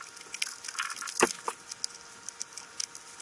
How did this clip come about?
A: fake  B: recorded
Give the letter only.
B